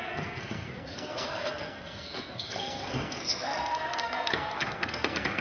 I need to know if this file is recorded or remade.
remade